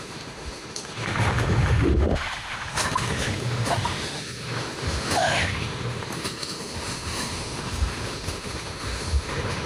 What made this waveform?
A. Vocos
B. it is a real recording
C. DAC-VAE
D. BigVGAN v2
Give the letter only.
C